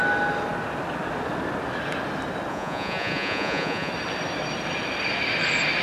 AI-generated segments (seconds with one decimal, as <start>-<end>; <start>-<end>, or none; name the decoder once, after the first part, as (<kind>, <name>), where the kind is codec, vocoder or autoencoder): 2.5-3.9 (vocoder, Vocos)